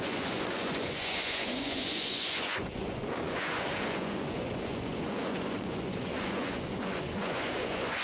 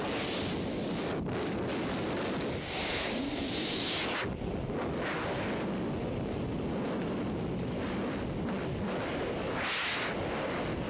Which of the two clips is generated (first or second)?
first